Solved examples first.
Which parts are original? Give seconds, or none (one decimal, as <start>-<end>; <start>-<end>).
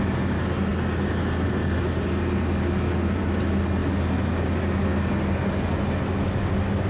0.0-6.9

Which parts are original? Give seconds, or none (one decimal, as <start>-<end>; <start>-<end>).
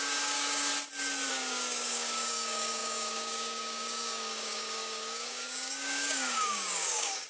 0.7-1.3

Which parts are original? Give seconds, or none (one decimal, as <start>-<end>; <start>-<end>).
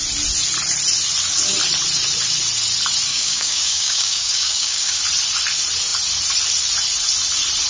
0.0-3.1; 5.0-7.7